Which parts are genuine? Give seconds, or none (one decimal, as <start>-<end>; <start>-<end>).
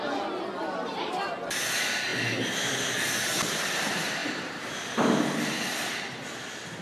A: 0.0-4.2; 6.2-6.8